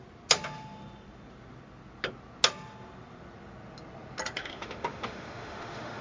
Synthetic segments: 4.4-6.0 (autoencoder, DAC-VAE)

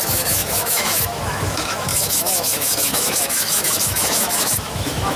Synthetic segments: 0.0-5.2 (autoencoder, DAC-VAE)